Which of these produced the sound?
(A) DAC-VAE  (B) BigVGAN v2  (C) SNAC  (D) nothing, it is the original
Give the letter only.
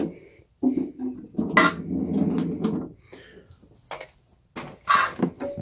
D